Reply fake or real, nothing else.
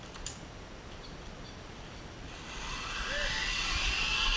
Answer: real